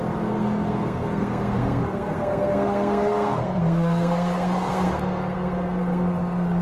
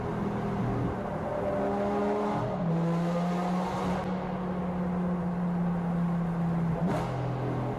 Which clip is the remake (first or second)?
first